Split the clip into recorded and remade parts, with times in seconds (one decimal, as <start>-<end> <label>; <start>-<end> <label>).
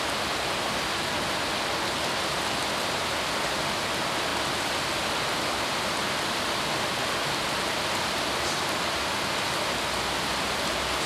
0.0-11.1 recorded